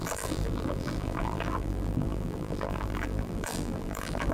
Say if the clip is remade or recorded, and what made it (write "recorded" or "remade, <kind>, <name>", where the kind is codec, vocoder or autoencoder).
remade, vocoder, BigVGAN v2